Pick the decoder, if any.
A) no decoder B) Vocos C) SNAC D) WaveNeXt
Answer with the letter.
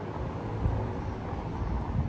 A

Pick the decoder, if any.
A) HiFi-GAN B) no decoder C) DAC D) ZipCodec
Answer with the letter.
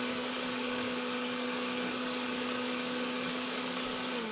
C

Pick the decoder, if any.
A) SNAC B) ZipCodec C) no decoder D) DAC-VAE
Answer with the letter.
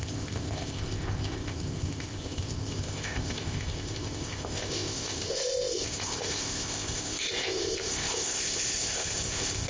B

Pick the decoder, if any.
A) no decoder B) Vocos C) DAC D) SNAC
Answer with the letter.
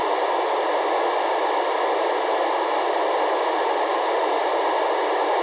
A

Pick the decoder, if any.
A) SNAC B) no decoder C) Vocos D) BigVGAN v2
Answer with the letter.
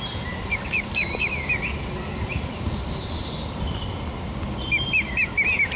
B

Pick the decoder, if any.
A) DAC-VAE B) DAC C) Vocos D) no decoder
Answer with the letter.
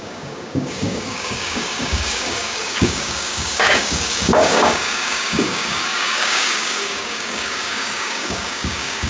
B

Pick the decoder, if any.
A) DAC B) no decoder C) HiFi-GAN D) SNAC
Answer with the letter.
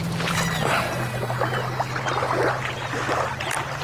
B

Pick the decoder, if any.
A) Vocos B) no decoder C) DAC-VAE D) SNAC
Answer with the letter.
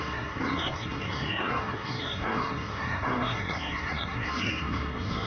D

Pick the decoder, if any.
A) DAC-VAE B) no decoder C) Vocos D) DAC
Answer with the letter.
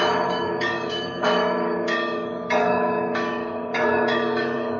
D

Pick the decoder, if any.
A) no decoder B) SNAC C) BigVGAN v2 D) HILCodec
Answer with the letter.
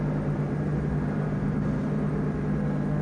A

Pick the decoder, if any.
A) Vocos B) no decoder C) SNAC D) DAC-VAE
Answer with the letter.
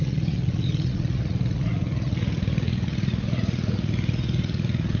A